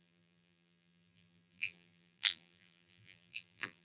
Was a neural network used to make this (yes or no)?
yes